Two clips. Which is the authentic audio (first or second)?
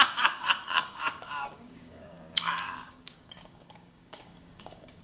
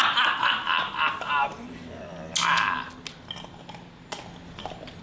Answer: second